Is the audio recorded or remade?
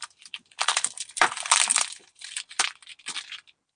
remade